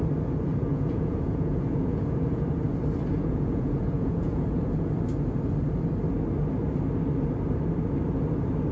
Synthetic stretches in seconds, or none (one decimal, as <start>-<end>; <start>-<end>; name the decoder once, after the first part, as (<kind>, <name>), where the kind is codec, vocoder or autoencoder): 0.7-2.4 (vocoder, Vocos); 3.1-4.9